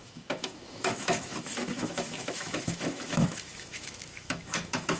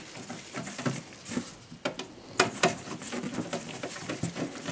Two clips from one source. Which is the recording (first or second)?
second